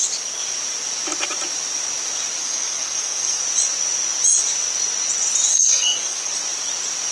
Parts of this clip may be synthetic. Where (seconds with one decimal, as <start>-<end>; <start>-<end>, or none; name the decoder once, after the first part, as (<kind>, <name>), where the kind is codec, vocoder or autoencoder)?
2.4-3.4 (codec, SNAC); 5.5-6.3